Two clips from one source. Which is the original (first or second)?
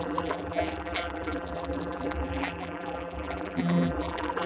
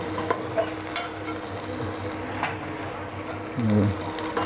second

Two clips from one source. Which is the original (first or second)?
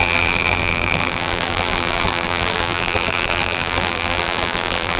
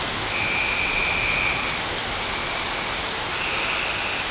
second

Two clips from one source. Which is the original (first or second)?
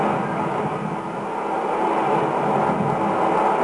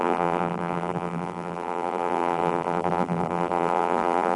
first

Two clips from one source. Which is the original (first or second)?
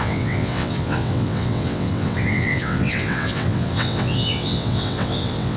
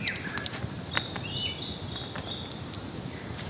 second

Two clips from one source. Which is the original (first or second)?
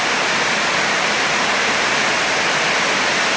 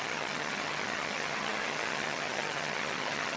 first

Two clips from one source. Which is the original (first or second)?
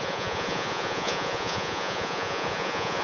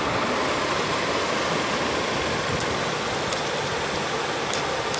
second